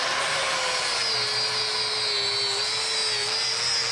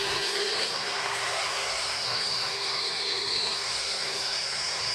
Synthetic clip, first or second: second